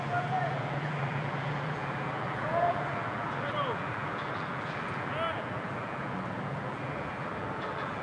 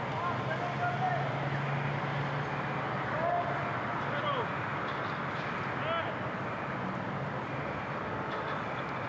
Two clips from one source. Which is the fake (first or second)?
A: first